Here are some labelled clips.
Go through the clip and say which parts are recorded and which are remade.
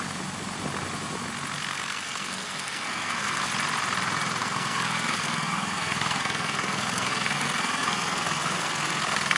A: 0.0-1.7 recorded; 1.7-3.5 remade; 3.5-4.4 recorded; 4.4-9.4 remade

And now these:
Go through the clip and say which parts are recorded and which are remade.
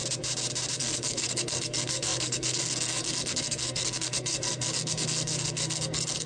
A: 0.0-0.8 recorded; 0.8-6.3 remade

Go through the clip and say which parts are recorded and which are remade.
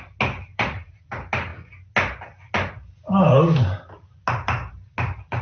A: 0.0-0.5 recorded; 0.5-1.1 remade; 1.1-5.4 recorded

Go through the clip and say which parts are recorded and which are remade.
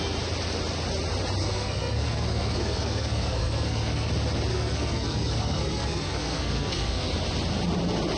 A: 0.0-1.4 recorded; 1.4-4.1 remade; 4.1-4.5 recorded; 4.5-7.1 remade; 7.1-8.2 recorded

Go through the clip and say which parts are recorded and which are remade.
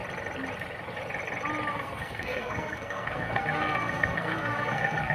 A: 0.0-1.7 recorded; 1.7-5.1 remade